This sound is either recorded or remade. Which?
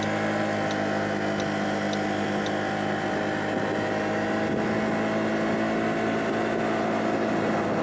recorded